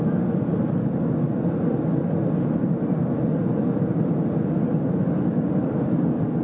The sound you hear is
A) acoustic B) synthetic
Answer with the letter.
A